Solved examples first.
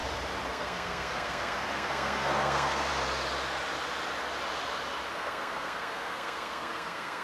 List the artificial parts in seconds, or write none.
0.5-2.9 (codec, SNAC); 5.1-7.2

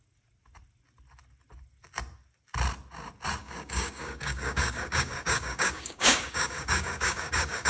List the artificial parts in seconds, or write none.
3.4-7.7 (codec, DAC)

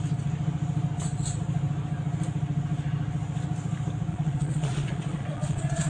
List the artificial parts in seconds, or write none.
4.1-5.9 (vocoder, Vocos)

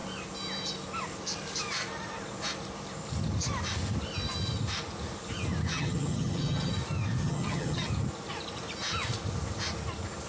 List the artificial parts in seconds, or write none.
5.7-6.7 (vocoder, HiFi-GAN); 7.2-7.9

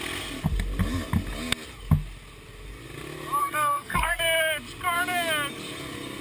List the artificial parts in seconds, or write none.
3.4-4.2 (codec, SNAC)